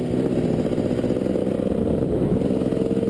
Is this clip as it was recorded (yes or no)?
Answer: yes